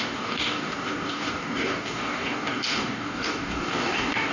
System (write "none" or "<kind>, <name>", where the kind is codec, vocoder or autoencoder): codec, DAC